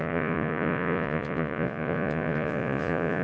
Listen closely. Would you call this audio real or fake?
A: fake